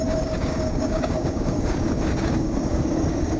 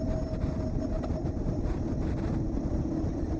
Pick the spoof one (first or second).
first